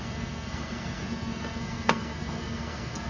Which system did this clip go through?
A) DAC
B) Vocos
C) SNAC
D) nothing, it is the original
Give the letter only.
C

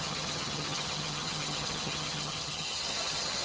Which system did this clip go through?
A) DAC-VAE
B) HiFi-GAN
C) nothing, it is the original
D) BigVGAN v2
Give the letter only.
B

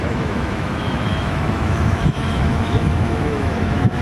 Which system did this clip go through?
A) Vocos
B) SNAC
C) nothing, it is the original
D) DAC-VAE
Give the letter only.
D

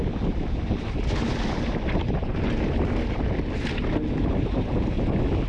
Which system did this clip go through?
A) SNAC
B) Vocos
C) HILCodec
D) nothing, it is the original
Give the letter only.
D